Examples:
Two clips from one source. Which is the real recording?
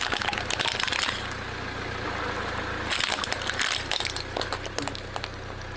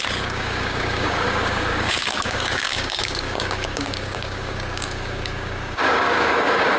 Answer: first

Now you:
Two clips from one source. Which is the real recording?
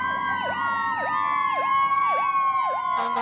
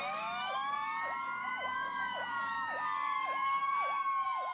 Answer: first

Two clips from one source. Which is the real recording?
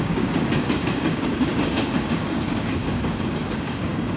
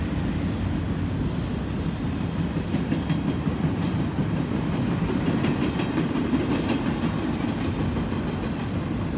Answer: second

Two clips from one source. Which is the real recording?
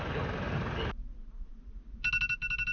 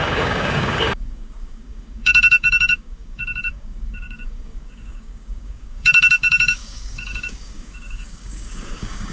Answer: first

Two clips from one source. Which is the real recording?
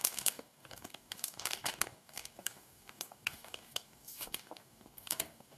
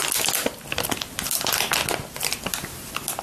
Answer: second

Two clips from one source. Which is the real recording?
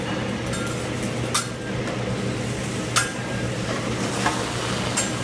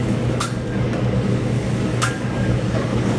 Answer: first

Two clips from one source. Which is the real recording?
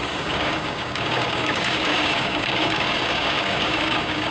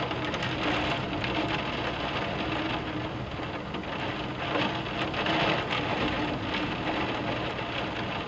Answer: second